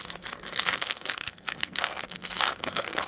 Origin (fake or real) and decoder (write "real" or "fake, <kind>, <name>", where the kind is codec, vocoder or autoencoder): fake, codec, SNAC